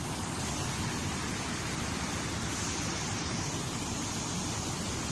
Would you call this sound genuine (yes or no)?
yes